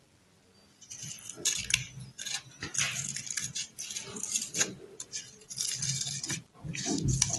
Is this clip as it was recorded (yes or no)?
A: yes